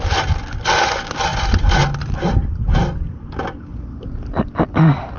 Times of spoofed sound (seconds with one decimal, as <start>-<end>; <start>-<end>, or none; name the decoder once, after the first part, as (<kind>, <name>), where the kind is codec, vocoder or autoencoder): none